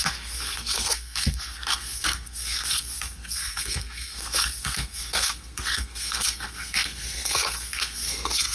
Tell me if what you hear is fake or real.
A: fake